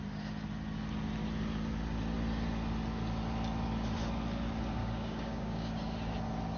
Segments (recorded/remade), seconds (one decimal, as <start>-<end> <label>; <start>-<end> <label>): 0.0-4.8 recorded; 4.8-5.8 remade; 5.8-6.6 recorded